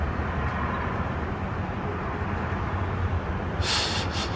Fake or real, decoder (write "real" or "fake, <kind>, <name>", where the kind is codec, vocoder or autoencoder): real